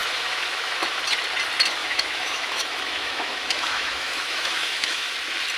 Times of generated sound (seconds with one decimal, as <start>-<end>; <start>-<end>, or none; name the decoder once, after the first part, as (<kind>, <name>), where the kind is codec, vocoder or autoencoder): 0.0-1.0 (autoencoder, DAC-VAE); 1.8-5.1